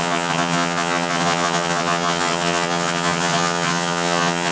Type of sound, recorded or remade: remade